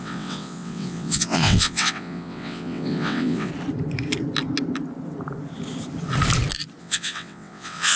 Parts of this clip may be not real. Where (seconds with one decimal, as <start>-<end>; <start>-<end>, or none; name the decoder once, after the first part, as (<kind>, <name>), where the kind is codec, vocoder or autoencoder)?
0.0-3.5 (vocoder, WaveNeXt); 6.8-8.0